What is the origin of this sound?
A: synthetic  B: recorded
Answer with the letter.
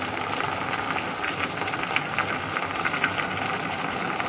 B